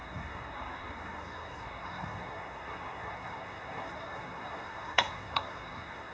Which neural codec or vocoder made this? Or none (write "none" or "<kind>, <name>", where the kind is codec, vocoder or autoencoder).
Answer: codec, SNAC